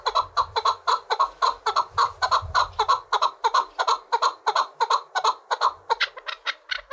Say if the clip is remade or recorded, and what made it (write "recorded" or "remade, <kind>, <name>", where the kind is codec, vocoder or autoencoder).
recorded